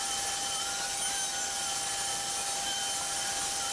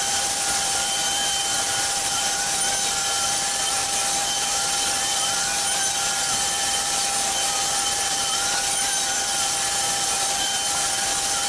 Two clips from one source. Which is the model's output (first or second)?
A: second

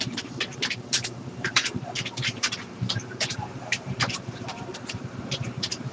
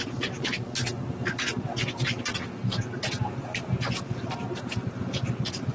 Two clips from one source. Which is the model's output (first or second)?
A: first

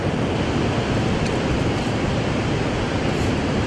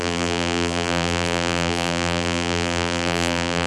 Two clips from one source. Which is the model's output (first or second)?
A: second